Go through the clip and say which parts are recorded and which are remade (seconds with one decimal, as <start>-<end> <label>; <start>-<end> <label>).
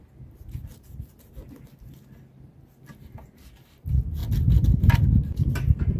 0.0-6.0 recorded